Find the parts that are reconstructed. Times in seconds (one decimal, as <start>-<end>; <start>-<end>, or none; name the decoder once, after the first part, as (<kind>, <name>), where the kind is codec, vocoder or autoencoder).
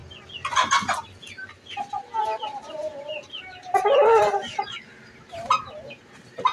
1.8-6.5 (vocoder, BigVGAN v2)